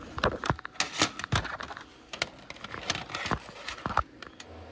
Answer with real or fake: real